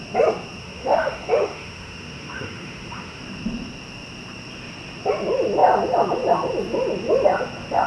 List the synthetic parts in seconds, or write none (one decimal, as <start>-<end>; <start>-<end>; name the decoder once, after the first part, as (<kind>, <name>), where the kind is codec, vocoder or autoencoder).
0.6-3.2 (autoencoder, DAC-VAE)

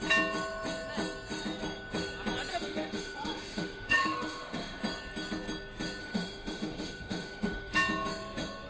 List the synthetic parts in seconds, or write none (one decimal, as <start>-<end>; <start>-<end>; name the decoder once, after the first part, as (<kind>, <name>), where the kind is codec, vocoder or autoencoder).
2.5-4.8 (autoencoder, DAC-VAE); 6.0-7.7

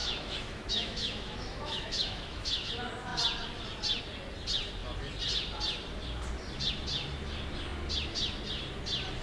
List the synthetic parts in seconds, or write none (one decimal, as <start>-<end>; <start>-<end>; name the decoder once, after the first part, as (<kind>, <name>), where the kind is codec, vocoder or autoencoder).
0.0-2.7 (autoencoder, DAC-VAE)

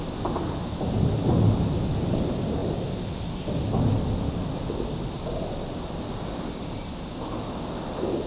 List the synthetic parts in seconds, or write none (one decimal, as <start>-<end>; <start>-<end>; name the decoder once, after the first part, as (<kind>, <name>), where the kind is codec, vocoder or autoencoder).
none

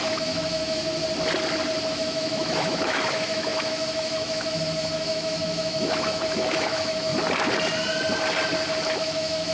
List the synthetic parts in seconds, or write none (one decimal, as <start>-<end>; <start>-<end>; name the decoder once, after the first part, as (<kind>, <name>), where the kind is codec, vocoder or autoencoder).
0.0-0.8 (autoencoder, DAC-VAE); 1.9-7.1; 8.9-9.5

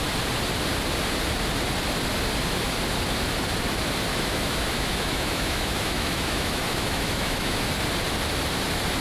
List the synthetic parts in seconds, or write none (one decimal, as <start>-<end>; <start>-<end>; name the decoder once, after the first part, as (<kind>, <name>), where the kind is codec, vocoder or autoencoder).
4.1-7.7 (autoencoder, DAC-VAE)

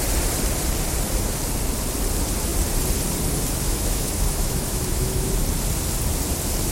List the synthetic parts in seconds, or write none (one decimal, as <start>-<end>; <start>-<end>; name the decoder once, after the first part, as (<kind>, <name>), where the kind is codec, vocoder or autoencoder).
3.6-5.3 (autoencoder, DAC-VAE)

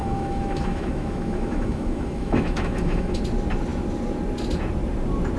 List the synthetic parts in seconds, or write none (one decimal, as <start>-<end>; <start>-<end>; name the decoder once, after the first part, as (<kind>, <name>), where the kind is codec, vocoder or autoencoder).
0.0-3.2 (autoencoder, DAC-VAE)